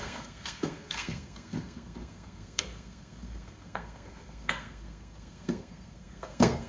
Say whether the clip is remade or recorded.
remade